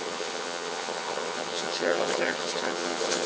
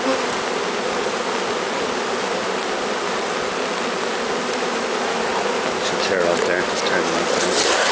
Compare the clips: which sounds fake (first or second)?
first